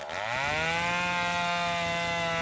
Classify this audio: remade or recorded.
recorded